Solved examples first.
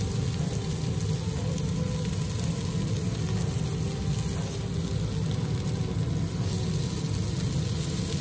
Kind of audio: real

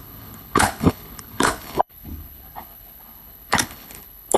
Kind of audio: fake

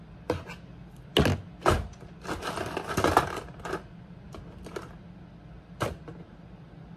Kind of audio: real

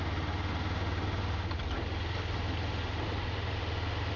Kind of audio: real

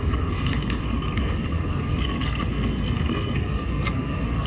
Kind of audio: fake